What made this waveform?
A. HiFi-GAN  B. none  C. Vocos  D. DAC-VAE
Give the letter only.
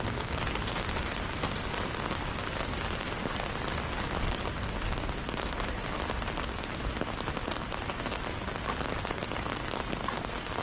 B